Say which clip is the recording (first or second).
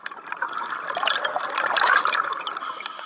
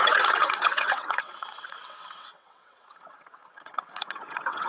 first